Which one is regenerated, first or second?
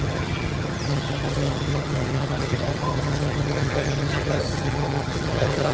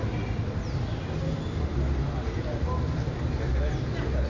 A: first